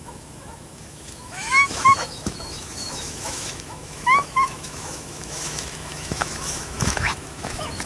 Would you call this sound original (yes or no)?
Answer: no